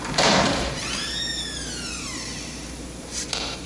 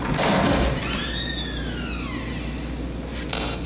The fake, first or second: first